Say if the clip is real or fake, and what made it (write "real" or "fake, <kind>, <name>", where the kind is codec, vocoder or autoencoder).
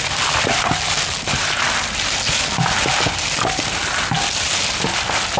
real